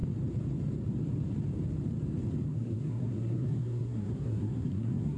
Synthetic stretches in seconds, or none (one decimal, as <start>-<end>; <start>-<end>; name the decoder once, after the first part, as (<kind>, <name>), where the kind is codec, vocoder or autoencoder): 2.5-5.2 (codec, SNAC)